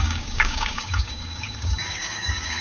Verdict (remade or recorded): remade